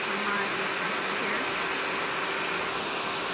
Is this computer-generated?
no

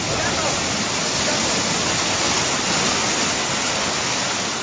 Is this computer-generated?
no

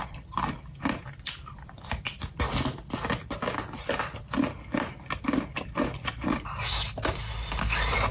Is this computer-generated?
no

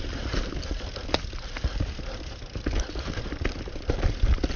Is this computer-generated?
no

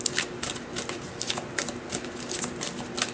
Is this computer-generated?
no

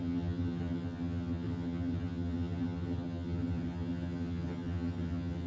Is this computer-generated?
yes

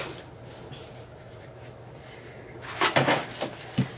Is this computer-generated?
no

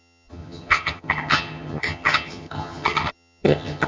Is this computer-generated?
yes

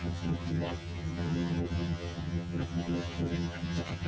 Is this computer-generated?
yes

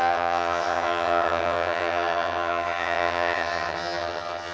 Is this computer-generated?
yes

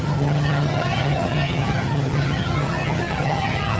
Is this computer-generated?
yes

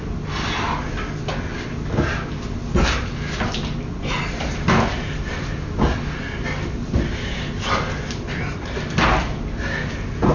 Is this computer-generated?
no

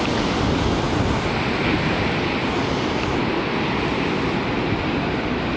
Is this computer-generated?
no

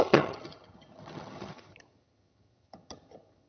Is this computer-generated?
yes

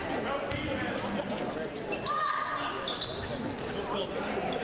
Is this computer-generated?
no